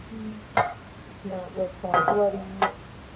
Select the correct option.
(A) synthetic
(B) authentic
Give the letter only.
B